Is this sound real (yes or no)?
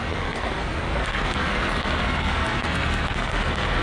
no